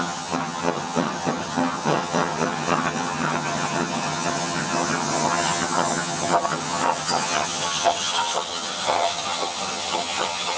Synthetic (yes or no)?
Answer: yes